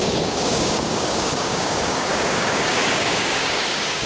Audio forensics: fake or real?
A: fake